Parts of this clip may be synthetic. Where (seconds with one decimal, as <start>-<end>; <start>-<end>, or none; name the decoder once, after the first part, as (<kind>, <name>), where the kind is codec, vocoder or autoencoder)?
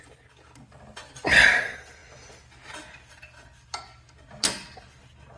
none